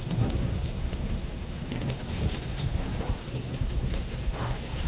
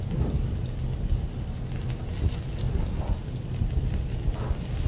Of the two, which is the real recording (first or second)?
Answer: second